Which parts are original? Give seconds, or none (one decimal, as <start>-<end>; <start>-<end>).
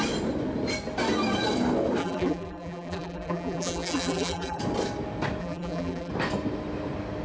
0.0-2.0; 4.6-5.4; 6.1-7.2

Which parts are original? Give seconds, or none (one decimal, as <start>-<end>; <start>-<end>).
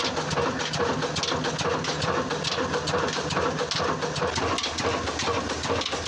0.0-6.1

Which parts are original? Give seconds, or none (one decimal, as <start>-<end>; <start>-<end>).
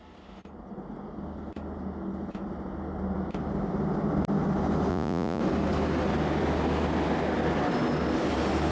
0.0-4.9; 5.4-8.7